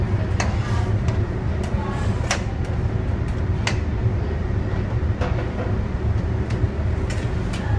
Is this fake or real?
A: real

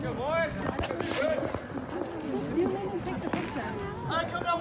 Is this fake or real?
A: real